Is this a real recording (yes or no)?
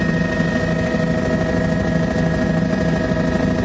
yes